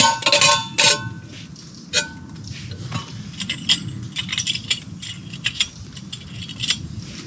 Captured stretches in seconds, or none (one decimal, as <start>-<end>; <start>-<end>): 0.0-7.3